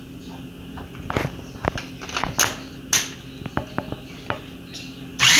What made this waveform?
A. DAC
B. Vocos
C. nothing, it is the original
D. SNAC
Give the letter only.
C